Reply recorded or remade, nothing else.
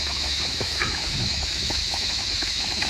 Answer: remade